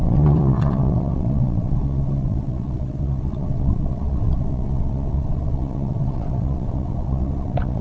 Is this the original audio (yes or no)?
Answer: no